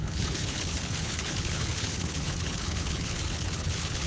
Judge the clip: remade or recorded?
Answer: remade